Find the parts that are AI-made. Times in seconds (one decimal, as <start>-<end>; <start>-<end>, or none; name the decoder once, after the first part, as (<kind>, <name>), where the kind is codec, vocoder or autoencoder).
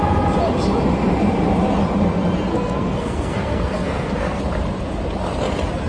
2.5-4.4 (codec, SNAC)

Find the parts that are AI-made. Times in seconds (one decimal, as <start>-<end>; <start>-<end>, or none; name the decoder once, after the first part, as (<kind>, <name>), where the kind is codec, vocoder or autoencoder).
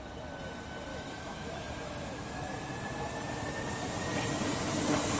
0.9-2.7 (autoencoder, DAC-VAE)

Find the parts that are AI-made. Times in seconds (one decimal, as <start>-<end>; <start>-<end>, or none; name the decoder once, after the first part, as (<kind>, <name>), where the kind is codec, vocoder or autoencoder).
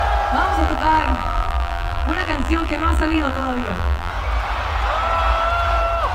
0.6-4.1 (vocoder, BigVGAN v2)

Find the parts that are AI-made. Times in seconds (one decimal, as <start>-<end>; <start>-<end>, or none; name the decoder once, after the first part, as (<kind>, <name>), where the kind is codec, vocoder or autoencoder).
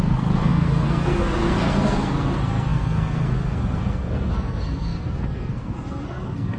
0.0-6.6 (codec, SNAC)